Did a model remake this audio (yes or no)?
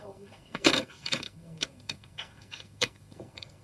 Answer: yes